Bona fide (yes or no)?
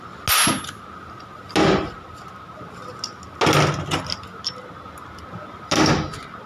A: yes